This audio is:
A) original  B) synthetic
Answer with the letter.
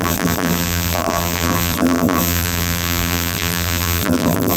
B